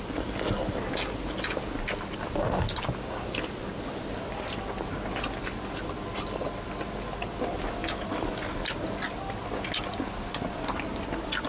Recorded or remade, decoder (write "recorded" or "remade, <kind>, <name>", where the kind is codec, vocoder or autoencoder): recorded